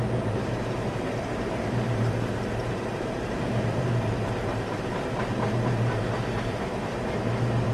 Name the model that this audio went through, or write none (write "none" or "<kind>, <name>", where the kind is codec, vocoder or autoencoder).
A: vocoder, BigVGAN v2